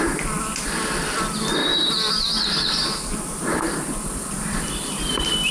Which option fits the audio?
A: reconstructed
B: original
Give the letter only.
B